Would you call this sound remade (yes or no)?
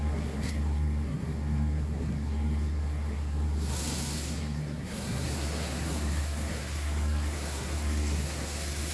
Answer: yes